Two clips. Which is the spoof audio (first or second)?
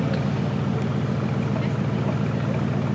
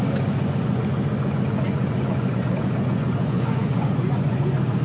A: second